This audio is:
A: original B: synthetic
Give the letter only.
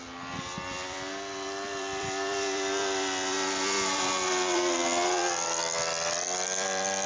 B